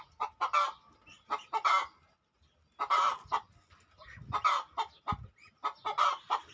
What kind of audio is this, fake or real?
real